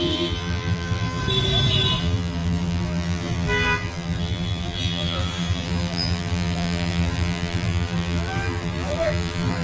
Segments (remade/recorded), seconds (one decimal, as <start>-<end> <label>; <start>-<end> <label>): 0.0-1.2 remade; 1.2-2.0 recorded; 2.0-9.6 remade